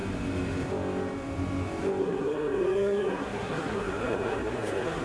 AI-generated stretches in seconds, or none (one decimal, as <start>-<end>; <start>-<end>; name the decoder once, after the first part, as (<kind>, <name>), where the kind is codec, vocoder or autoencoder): 2.0-5.0 (codec, SNAC)